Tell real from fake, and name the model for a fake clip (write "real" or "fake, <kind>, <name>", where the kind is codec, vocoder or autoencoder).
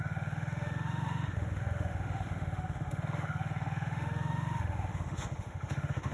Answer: fake, autoencoder, DAC-VAE